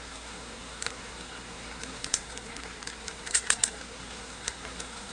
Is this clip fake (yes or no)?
yes